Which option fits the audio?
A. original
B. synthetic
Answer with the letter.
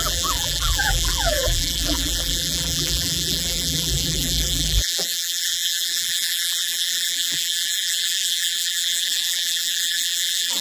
B